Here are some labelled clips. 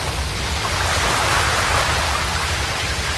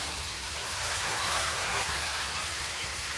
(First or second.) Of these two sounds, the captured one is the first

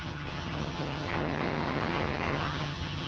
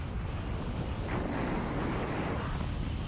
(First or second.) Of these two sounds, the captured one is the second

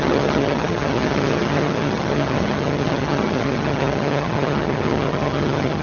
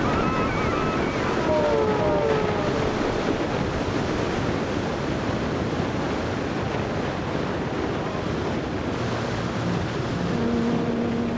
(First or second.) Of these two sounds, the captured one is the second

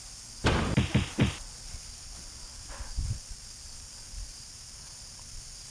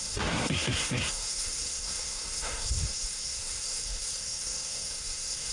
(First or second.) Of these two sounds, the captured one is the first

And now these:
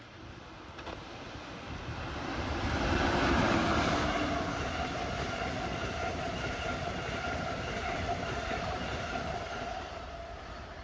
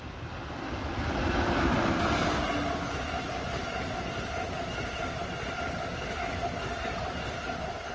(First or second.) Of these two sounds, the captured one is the second